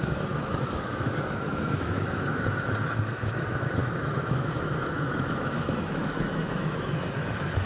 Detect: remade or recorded remade